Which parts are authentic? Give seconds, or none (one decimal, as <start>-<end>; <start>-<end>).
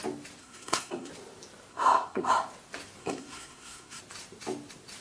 0.0-0.4; 1.1-1.7; 2.3-3.0; 4.0-5.0